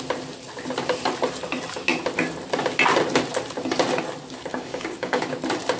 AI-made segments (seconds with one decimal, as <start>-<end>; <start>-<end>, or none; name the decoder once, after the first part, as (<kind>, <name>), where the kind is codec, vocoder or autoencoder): 4.5-5.2 (codec, DAC)